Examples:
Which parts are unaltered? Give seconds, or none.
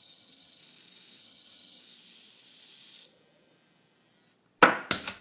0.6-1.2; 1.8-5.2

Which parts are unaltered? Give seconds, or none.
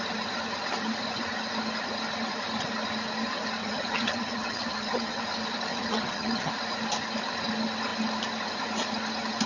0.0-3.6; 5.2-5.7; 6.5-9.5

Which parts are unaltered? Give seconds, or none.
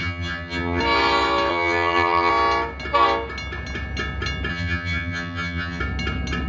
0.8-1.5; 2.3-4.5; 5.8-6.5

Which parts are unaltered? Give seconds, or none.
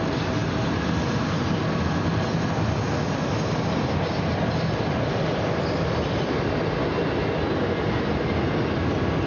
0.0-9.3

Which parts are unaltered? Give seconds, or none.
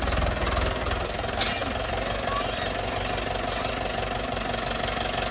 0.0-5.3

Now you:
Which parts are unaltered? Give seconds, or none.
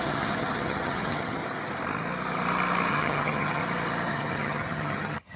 1.4-2.9; 3.6-4.1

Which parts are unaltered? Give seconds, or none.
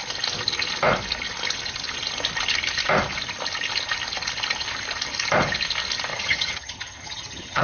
0.0-6.1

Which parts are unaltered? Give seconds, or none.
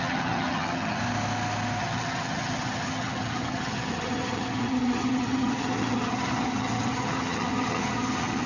1.0-1.8